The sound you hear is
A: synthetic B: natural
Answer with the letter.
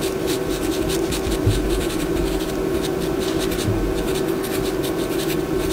B